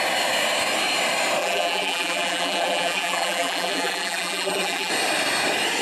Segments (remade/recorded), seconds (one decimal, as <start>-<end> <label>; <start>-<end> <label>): 0.0-1.4 recorded; 1.4-4.9 remade; 4.9-5.8 recorded